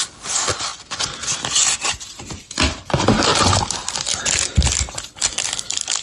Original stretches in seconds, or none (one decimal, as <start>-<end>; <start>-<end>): 0.0-6.0